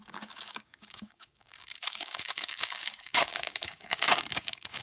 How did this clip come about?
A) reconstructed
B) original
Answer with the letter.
A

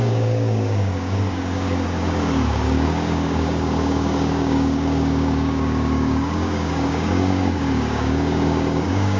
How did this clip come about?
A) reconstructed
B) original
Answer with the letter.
A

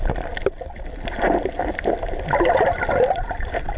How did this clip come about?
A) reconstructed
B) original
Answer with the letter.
B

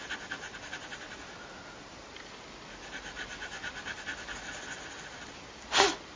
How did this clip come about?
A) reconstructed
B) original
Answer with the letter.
B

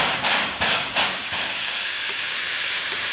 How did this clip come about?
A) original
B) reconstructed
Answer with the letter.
B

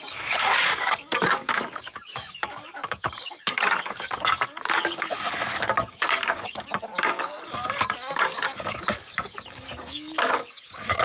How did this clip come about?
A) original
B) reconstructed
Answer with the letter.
B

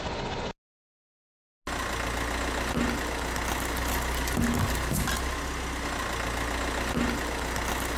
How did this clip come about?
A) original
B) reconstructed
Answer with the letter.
A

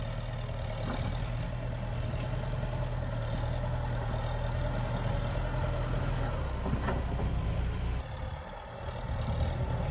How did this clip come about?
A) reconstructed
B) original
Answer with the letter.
B